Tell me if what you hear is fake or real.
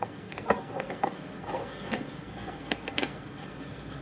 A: fake